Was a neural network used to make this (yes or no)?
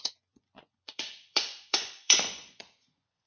yes